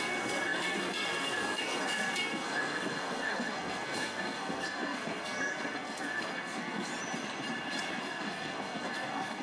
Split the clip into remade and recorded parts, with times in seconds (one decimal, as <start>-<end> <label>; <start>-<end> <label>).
0.0-6.9 remade; 6.9-8.0 recorded; 8.0-9.4 remade

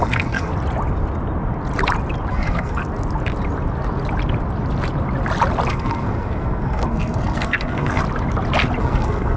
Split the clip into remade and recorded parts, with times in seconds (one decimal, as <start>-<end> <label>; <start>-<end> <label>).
0.0-0.5 remade; 0.5-2.3 recorded; 2.3-2.8 remade; 2.8-5.7 recorded; 5.7-8.0 remade; 8.0-8.8 recorded; 8.8-9.4 remade

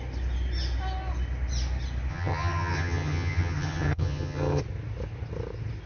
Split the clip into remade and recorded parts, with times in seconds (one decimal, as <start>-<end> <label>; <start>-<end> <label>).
0.0-2.1 recorded; 2.1-4.6 remade; 4.6-5.9 recorded